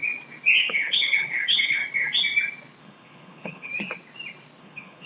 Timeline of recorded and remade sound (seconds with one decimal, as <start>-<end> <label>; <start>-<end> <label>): 0.0-0.6 recorded; 0.6-1.8 remade; 1.8-2.8 recorded; 2.8-3.7 remade; 3.7-4.6 recorded; 4.6-5.1 remade